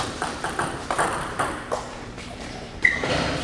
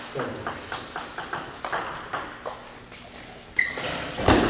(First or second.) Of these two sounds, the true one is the second